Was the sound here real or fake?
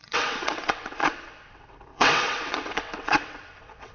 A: fake